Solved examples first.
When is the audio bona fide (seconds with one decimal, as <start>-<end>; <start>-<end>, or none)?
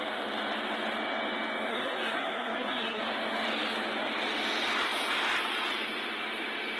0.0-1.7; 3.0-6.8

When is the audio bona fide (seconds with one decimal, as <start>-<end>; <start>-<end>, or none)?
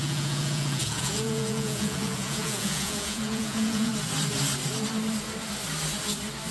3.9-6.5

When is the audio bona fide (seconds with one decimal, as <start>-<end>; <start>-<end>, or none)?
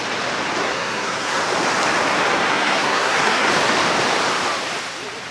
0.0-0.6; 1.4-2.4; 3.5-5.3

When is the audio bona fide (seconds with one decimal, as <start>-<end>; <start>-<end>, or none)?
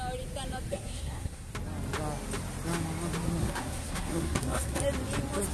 0.0-0.7; 1.5-3.4; 4.8-5.5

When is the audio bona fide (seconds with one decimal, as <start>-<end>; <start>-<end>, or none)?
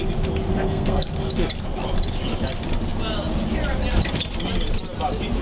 0.0-0.5; 1.1-5.4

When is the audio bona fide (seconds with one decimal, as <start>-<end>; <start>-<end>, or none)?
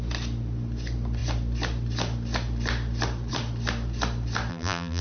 0.0-4.5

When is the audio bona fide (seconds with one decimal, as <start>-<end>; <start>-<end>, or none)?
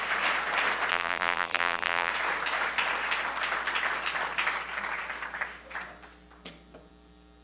0.0-0.9; 2.1-7.4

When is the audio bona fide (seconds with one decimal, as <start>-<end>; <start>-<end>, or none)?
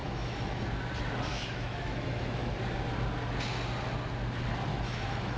0.6-1.3; 2.5-4.7